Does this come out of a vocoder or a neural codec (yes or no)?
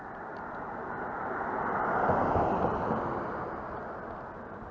no